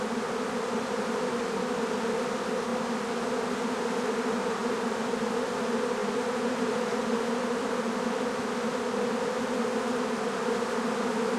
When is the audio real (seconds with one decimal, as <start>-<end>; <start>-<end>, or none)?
0.0-6.0; 8.4-11.4